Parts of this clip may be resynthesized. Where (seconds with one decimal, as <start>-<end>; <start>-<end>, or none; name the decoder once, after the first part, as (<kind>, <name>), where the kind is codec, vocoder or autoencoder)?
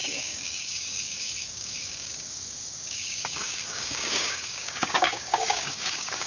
0.0-6.3 (codec, DAC)